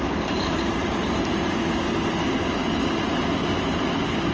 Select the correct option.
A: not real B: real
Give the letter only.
B